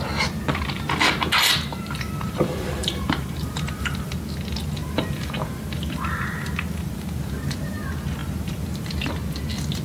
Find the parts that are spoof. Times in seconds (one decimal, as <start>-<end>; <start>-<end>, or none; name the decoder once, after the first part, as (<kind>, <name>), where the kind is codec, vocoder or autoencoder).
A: 1.7-4.1 (vocoder, BigVGAN v2); 4.8-7.8; 8.2-9.1